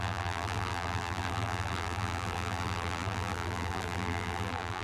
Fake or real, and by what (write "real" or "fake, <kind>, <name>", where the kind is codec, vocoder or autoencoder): fake, vocoder, BigVGAN v2